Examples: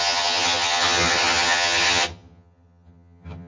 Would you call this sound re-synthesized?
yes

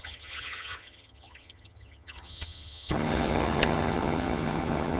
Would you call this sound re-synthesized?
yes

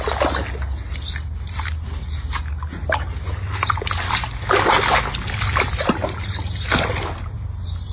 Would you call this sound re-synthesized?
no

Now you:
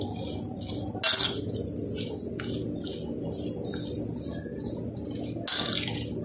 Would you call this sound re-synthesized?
no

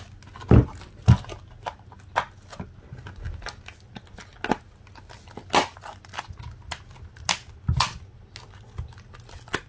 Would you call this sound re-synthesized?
no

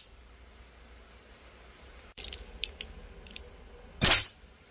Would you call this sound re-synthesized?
no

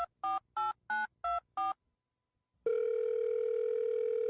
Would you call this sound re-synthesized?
no